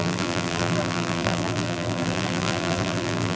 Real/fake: fake